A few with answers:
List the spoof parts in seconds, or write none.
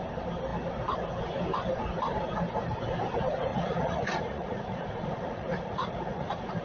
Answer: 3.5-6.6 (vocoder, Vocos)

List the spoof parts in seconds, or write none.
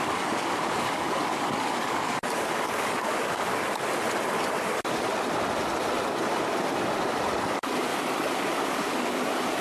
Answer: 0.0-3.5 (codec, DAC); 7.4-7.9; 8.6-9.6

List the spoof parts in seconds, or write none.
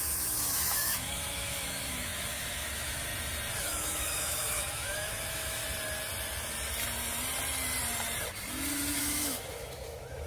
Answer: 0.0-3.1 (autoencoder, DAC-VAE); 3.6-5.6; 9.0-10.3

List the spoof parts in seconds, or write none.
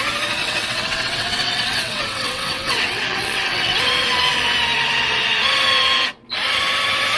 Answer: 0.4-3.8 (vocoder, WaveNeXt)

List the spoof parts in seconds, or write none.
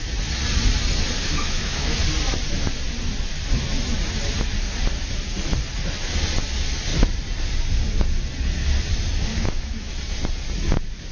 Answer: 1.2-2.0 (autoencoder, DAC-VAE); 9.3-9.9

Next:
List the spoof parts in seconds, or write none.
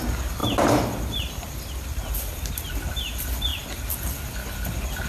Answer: none